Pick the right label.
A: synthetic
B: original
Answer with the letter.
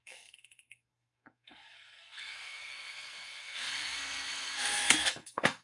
A